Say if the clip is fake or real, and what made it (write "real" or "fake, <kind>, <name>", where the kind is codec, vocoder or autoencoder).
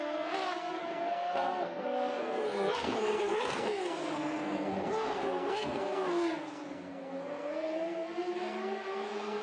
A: fake, codec, SNAC